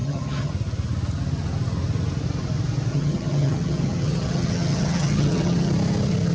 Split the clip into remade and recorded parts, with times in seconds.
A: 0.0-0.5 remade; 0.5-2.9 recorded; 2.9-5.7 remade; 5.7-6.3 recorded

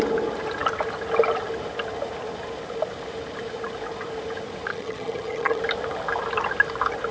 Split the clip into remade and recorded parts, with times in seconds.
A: 0.0-4.7 recorded; 4.7-5.6 remade; 5.6-7.1 recorded

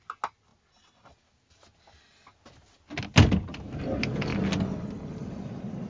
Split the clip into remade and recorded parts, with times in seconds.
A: 0.0-5.9 recorded